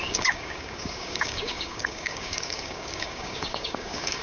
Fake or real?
fake